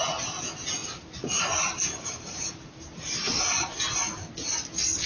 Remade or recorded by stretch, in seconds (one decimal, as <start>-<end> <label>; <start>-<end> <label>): 0.0-0.8 recorded; 0.8-3.5 remade; 3.5-5.1 recorded